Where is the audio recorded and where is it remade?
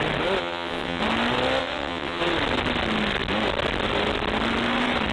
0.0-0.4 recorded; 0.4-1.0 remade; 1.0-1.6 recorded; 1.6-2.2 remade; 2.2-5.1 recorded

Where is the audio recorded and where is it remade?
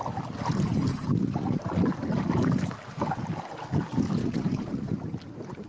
0.0-0.9 recorded; 0.9-1.6 remade; 1.6-4.2 recorded; 4.2-4.9 remade; 4.9-5.7 recorded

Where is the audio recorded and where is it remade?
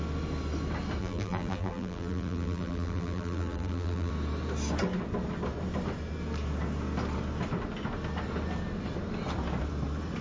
0.0-1.0 recorded; 1.0-4.1 remade; 4.1-10.2 recorded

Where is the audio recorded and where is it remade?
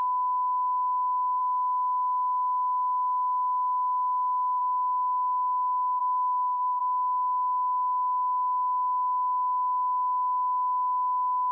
0.0-6.0 recorded; 6.0-6.8 remade; 6.8-11.5 recorded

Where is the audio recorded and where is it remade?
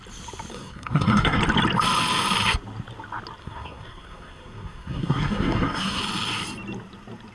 0.0-0.5 recorded; 0.5-1.4 remade; 1.4-3.4 recorded; 3.4-6.0 remade; 6.0-7.3 recorded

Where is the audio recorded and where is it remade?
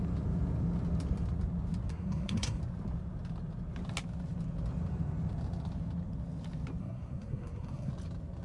0.0-1.9 recorded; 1.9-2.6 remade; 2.6-6.8 recorded; 6.8-7.9 remade; 7.9-8.4 recorded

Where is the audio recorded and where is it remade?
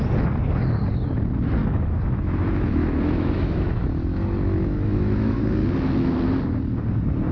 0.0-1.6 recorded; 1.6-5.4 remade; 5.4-7.3 recorded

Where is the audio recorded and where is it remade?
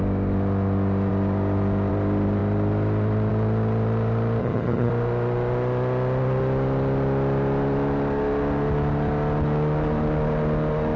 0.0-4.4 recorded; 4.4-4.9 remade; 4.9-11.0 recorded